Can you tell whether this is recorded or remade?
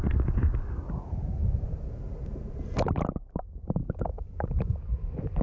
recorded